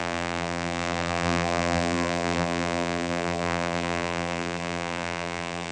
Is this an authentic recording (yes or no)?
no